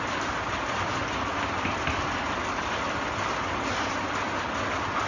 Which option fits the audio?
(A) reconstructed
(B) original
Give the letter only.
B